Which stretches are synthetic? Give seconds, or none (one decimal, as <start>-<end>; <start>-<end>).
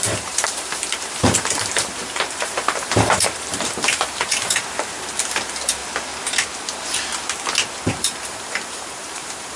0.0-5.8; 7.9-9.6